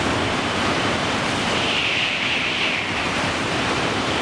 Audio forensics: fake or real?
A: fake